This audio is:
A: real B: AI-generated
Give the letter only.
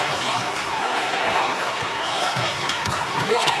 B